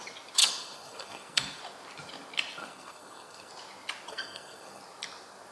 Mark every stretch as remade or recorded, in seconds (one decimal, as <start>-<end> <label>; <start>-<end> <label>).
0.0-0.4 recorded; 0.4-1.6 remade; 1.6-2.6 recorded; 2.6-3.5 remade; 3.5-4.1 recorded; 4.1-4.8 remade; 4.8-5.5 recorded